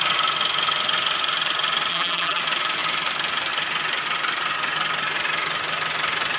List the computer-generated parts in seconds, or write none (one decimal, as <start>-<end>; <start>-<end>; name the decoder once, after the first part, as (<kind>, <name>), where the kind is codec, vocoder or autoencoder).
1.9-2.4 (vocoder, BigVGAN v2)